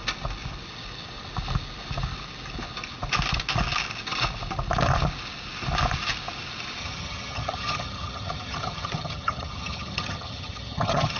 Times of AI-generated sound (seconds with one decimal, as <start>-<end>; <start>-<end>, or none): 6.8-11.2